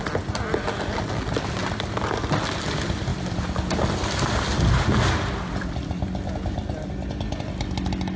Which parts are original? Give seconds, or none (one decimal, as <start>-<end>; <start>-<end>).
0.0-8.2